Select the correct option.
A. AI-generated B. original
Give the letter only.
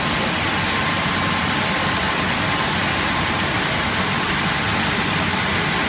B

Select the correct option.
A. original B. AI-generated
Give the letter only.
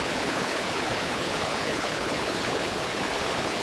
B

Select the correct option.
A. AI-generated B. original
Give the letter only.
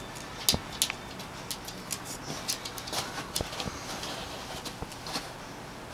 B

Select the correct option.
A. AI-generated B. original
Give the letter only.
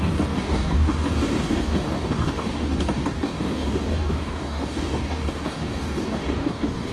A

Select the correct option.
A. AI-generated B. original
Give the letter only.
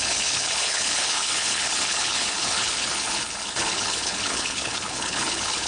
A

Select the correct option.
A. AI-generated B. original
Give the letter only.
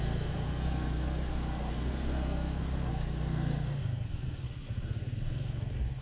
A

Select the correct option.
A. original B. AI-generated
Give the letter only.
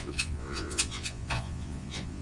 B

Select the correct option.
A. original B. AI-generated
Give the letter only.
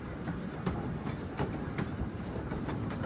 B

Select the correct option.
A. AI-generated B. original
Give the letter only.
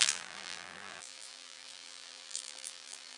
A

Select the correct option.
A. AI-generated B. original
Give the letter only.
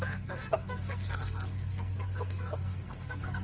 A